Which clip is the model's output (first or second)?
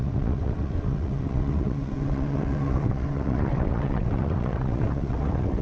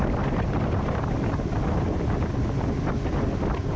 first